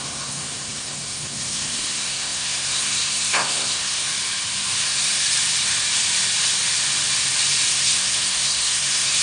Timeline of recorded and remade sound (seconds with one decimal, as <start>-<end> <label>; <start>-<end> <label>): 0.0-4.1 remade; 4.1-4.8 recorded; 4.8-5.2 remade; 5.2-7.7 recorded; 7.7-9.2 remade